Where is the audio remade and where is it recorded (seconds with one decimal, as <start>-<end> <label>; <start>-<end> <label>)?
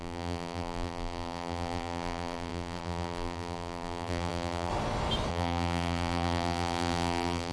0.0-4.7 remade; 4.7-5.3 recorded; 5.3-7.5 remade